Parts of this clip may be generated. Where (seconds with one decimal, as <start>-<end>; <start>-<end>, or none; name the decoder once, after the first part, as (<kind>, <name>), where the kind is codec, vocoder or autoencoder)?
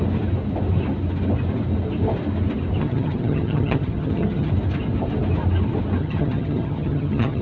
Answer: 2.8-4.5 (vocoder, HiFi-GAN); 6.0-7.4